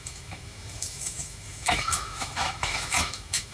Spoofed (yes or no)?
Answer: yes